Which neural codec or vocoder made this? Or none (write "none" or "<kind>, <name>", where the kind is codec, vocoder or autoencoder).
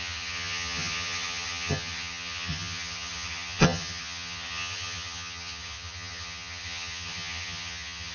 vocoder, HiFi-GAN